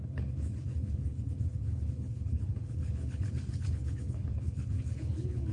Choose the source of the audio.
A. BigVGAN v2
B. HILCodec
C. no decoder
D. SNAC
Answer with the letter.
B